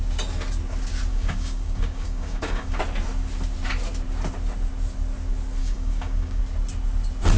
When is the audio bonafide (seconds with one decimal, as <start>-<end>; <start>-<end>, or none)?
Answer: 0.0-1.1; 2.8-5.6; 6.4-7.4